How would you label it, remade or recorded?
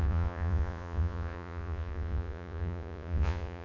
remade